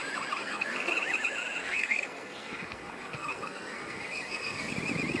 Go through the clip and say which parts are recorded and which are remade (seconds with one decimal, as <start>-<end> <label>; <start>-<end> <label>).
0.0-0.4 recorded; 0.4-0.9 remade; 0.9-1.6 recorded; 1.6-4.7 remade; 4.7-5.2 recorded